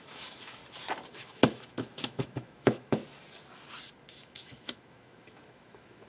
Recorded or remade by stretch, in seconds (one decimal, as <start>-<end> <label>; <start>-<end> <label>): 0.0-0.6 remade; 0.6-1.1 recorded; 1.1-3.0 remade; 3.0-4.1 recorded; 4.1-6.1 remade

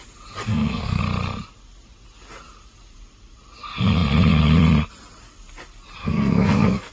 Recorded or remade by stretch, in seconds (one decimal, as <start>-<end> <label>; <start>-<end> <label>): 0.0-0.5 recorded; 0.5-1.0 remade; 1.0-6.0 recorded; 6.0-6.9 remade

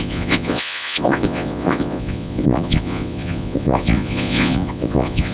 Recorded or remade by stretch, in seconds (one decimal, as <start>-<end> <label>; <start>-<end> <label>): 0.0-5.3 remade

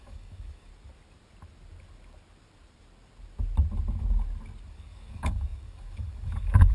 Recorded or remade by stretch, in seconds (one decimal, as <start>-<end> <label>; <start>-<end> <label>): 0.0-0.7 remade; 0.7-4.7 recorded; 4.7-6.7 remade

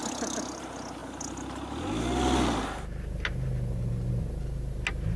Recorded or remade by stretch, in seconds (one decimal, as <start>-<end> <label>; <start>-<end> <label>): 0.0-5.2 recorded